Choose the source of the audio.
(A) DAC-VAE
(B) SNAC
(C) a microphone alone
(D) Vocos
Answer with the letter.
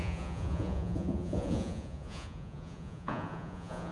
D